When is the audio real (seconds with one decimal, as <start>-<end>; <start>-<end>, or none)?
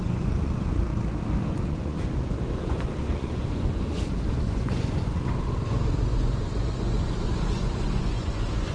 0.9-1.5